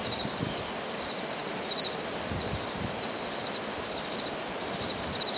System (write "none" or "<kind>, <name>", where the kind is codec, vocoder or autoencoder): none